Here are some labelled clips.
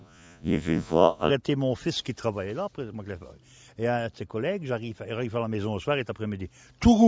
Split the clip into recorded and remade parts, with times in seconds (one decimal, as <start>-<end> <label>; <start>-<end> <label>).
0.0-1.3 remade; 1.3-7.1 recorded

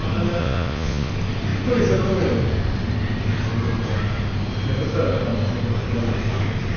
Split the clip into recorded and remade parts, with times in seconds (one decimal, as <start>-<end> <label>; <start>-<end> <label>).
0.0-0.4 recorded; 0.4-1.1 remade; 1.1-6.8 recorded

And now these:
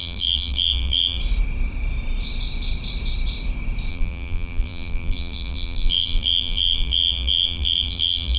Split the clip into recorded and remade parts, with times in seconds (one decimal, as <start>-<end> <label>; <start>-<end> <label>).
0.0-1.2 remade; 1.2-3.9 recorded; 3.9-8.4 remade

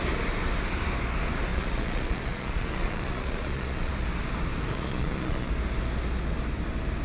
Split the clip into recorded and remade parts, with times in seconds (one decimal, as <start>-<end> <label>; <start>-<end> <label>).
0.0-1.5 recorded; 1.5-3.9 remade; 3.9-4.7 recorded; 4.7-5.5 remade; 5.5-7.0 recorded